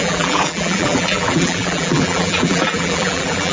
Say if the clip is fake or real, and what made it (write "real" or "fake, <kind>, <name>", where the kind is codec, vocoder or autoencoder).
fake, vocoder, BigVGAN v2